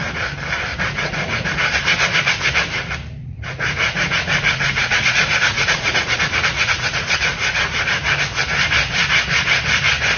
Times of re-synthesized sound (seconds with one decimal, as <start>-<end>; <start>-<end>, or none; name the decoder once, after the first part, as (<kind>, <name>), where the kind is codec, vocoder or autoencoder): 0.7-1.5 (vocoder, Vocos); 3.2-7.8